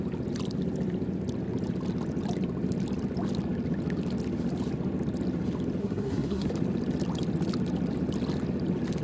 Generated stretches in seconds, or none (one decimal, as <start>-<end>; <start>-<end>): 5.8-6.5